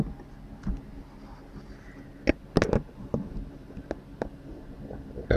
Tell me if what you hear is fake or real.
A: real